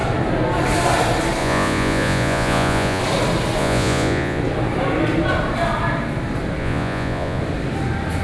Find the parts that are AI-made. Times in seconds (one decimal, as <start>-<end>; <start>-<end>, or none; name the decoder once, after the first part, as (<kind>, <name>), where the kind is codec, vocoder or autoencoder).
1.4-3.0 (vocoder, Vocos); 3.6-4.4; 6.6-7.4